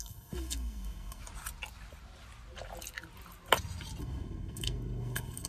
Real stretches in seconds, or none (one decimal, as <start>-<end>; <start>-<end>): 1.2-4.0